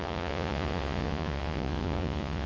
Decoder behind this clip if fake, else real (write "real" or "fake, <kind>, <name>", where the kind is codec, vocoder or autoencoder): fake, vocoder, Vocos